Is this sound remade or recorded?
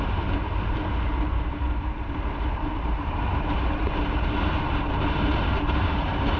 remade